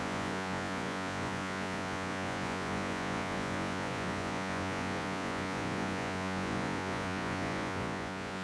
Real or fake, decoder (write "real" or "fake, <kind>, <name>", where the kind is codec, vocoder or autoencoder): fake, vocoder, Vocos